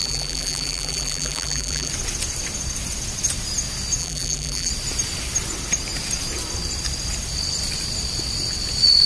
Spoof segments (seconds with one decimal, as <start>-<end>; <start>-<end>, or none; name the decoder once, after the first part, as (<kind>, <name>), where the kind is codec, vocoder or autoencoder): 0.0-1.9 (vocoder, BigVGAN v2); 4.0-4.7